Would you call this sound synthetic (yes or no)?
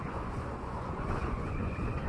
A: yes